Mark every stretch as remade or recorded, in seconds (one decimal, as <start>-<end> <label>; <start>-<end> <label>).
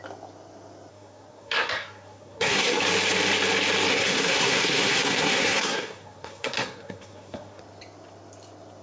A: 0.0-0.9 recorded; 0.9-2.8 remade; 2.8-3.9 recorded; 3.9-7.6 remade; 7.6-8.8 recorded